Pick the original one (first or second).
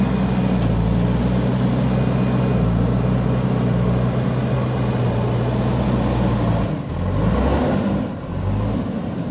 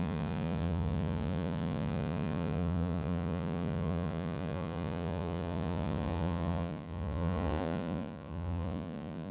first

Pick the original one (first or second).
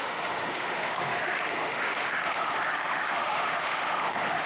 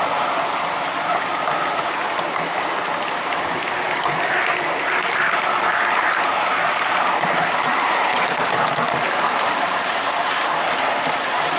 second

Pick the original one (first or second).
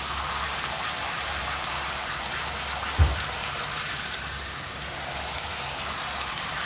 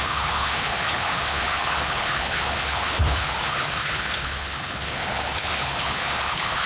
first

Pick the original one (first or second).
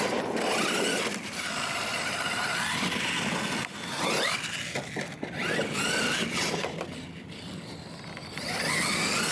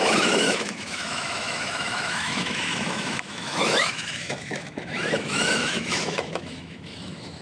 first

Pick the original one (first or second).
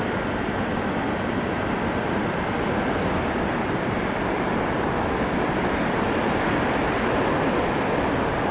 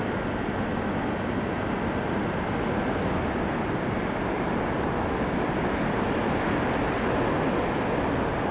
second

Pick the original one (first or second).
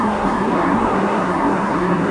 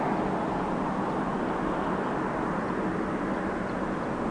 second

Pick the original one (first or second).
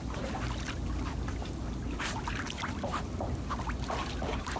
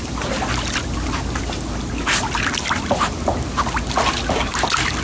second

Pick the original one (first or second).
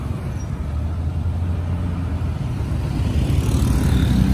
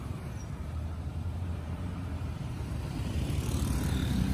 first